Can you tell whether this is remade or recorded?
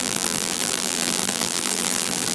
remade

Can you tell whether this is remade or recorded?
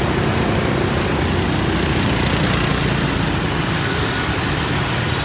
recorded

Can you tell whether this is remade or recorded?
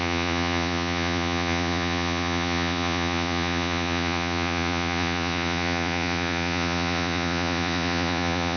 remade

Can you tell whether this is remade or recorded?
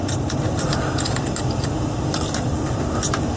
recorded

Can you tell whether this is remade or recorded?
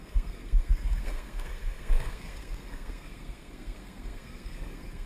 remade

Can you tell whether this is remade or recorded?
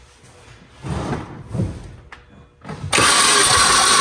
recorded